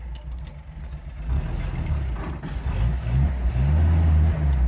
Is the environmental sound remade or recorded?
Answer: recorded